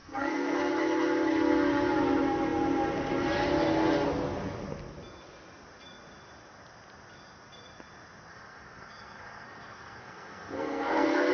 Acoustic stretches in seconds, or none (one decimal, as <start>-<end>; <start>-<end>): 0.7-8.3